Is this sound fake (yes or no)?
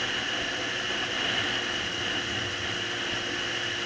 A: no